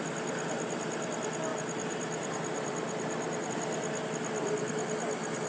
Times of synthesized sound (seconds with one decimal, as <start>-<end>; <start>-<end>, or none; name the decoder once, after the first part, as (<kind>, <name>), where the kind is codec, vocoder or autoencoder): 1.5-3.5 (vocoder, BigVGAN v2)